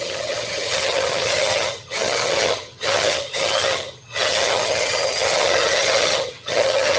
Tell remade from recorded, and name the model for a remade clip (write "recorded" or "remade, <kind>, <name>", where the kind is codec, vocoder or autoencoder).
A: remade, vocoder, HiFi-GAN